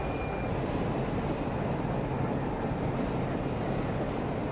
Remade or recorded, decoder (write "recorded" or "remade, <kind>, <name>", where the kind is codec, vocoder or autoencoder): recorded